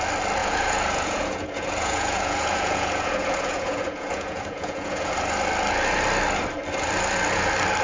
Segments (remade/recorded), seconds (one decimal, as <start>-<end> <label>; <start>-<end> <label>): 0.0-0.4 recorded; 0.4-5.1 remade; 5.1-7.8 recorded